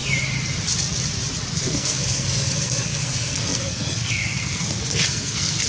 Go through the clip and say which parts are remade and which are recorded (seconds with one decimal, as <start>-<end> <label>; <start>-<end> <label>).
0.0-1.5 recorded; 1.5-5.7 remade